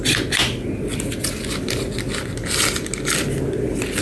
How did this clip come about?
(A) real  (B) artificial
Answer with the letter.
A